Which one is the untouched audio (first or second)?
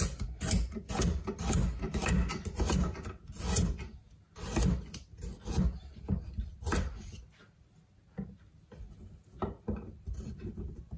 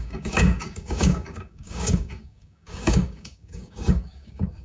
first